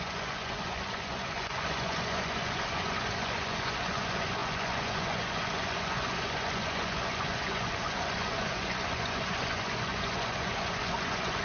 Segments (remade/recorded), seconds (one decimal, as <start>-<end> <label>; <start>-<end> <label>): 0.0-11.4 remade